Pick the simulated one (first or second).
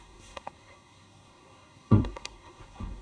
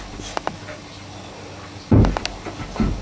first